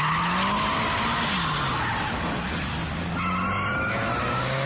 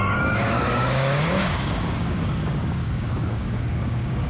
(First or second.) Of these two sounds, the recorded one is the first